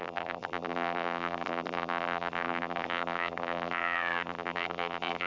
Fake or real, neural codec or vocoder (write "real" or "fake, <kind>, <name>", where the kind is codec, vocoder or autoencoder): fake, vocoder, BigVGAN v2